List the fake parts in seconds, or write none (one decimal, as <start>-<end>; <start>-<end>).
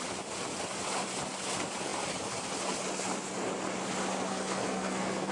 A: 4.3-5.3